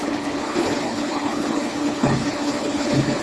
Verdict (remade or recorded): remade